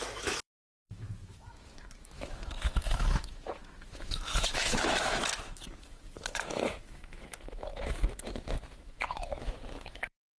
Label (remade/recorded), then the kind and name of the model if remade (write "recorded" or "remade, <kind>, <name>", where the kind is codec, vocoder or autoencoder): remade, autoencoder, DAC-VAE